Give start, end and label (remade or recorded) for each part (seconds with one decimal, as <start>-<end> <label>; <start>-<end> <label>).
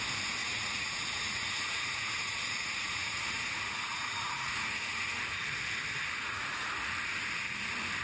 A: 0.0-0.4 recorded; 0.4-5.2 remade; 5.2-6.2 recorded; 6.2-6.7 remade; 6.7-8.0 recorded